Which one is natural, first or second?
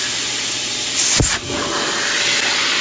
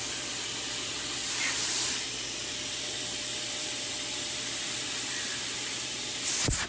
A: first